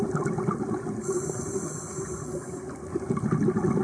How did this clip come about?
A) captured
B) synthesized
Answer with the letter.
A